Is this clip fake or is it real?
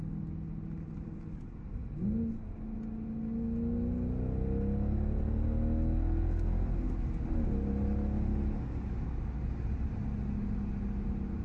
real